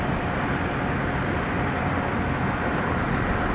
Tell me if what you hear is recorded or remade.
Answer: recorded